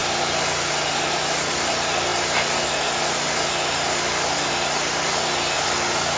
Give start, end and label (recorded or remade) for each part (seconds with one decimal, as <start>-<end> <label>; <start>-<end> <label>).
0.0-6.2 recorded

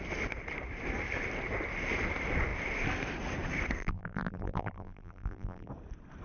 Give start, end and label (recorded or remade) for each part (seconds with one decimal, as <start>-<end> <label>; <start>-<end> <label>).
0.0-3.8 recorded; 3.8-5.7 remade; 5.7-6.2 recorded

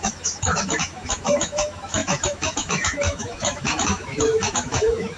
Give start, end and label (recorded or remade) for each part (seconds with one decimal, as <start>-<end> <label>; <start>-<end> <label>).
0.0-5.2 remade

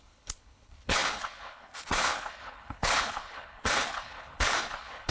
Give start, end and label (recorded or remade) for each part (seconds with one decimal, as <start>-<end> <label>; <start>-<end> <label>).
0.0-5.1 remade

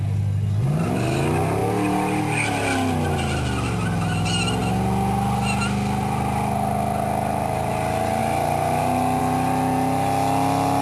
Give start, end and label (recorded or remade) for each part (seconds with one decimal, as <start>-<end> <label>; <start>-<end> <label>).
0.0-1.6 recorded; 1.6-2.2 remade; 2.2-8.2 recorded; 8.2-9.2 remade; 9.2-10.8 recorded

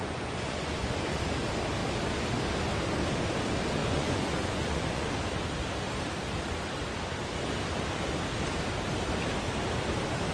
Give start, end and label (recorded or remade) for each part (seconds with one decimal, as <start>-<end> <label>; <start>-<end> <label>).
0.0-1.3 remade; 1.3-3.8 recorded; 3.8-5.1 remade; 5.1-10.3 recorded

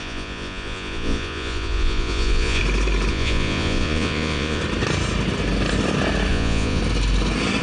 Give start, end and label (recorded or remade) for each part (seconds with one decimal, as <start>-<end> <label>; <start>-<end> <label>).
0.0-2.6 remade; 2.6-3.1 recorded; 3.1-4.6 remade; 4.6-6.3 recorded; 6.3-6.8 remade; 6.8-7.6 recorded